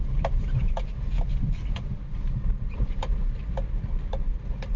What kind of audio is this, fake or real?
real